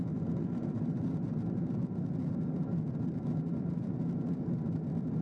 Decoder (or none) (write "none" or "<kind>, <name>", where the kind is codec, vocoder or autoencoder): none